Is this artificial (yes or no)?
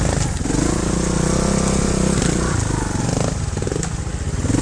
no